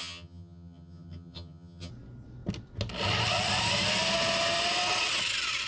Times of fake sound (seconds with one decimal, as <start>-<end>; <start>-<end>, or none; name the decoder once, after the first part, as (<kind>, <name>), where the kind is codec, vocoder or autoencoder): 0.0-1.9 (vocoder, HiFi-GAN)